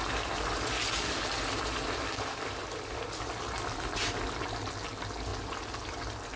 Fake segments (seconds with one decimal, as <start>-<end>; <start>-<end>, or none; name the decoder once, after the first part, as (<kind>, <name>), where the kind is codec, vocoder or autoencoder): none